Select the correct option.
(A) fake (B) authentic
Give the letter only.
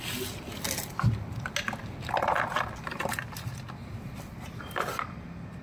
B